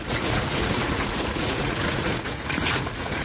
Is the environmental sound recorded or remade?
remade